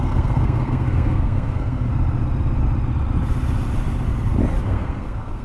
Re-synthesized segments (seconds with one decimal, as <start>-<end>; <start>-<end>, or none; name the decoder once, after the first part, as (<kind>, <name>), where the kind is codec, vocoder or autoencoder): 0.0-1.9 (codec, SNAC); 4.6-5.4